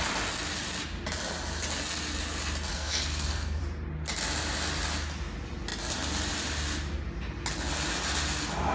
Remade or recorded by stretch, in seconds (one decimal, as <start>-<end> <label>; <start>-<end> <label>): 0.0-2.7 recorded; 2.7-3.6 remade; 3.6-8.7 recorded